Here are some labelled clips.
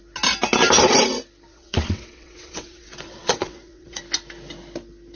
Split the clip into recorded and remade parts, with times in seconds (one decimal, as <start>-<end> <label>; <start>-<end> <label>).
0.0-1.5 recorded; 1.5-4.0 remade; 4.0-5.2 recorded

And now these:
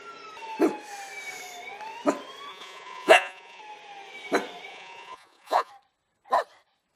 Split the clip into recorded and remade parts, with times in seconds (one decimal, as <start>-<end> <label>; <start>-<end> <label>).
0.0-2.5 recorded; 2.5-3.6 remade; 3.6-4.7 recorded; 4.7-5.7 remade; 5.7-7.0 recorded

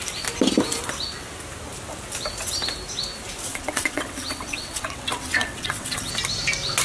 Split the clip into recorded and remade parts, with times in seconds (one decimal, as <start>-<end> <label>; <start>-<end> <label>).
0.0-3.5 recorded; 3.5-6.1 remade; 6.1-6.8 recorded

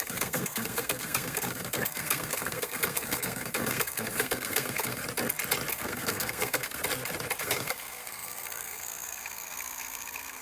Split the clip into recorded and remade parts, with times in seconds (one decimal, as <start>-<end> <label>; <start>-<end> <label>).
0.0-5.0 remade; 5.0-5.7 recorded; 5.7-6.8 remade; 6.8-7.4 recorded; 7.4-10.4 remade